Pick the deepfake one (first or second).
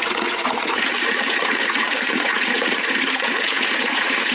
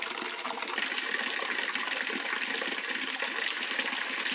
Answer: first